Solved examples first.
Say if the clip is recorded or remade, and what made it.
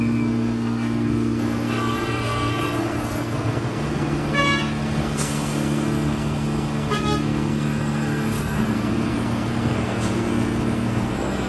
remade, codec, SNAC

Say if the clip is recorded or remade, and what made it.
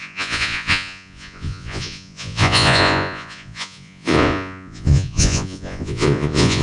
remade, vocoder, Vocos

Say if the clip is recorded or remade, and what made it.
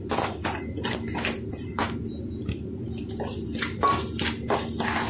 recorded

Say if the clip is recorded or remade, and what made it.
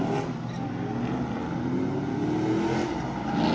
recorded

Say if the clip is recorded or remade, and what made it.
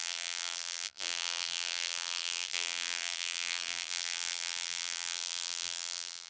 remade, vocoder, BigVGAN v2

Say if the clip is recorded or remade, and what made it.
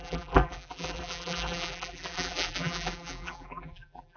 remade, vocoder, BigVGAN v2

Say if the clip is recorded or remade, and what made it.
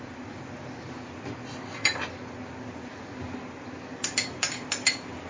recorded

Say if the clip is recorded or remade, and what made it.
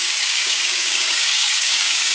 remade, codec, DAC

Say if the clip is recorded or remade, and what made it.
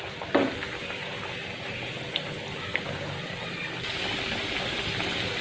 recorded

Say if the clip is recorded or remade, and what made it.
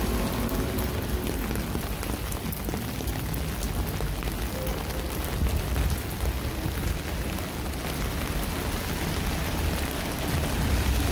recorded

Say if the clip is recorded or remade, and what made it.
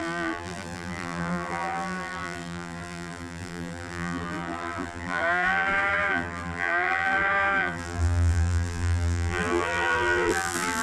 remade, vocoder, BigVGAN v2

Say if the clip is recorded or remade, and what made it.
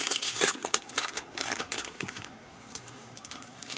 remade, codec, SNAC